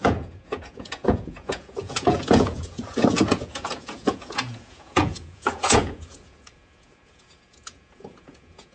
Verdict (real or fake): fake